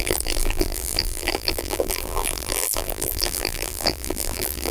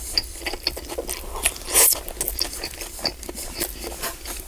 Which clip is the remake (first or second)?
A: first